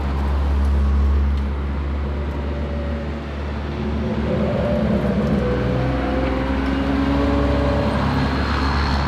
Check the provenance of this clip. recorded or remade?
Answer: recorded